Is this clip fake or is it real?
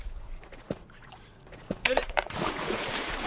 fake